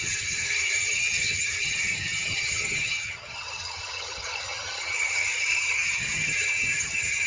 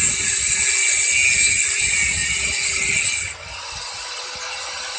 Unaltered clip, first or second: second